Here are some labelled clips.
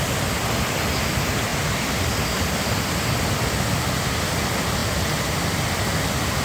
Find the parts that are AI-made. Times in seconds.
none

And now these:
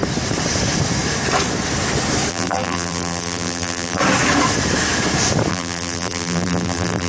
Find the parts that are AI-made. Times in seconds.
2.3-4.0 (vocoder, BigVGAN v2); 5.5-7.1